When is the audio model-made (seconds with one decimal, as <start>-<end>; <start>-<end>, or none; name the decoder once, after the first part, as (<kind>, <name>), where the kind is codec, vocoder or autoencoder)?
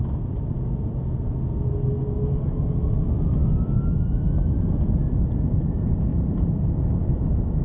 none